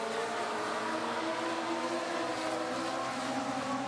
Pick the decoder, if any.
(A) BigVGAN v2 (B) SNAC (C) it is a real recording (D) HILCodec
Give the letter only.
C